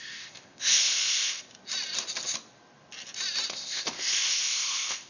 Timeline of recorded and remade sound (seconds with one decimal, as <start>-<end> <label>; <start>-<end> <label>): 0.0-1.4 remade; 1.4-3.5 recorded; 3.5-5.1 remade